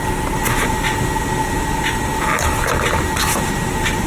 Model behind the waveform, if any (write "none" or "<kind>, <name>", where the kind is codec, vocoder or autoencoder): none